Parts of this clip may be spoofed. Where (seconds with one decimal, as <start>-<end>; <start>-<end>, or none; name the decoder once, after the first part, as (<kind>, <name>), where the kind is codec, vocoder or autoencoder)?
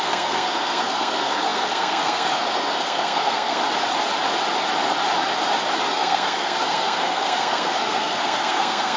0.0-3.6 (codec, SNAC); 5.9-9.0